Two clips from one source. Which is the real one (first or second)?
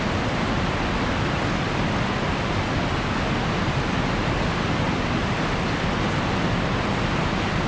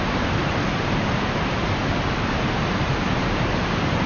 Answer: first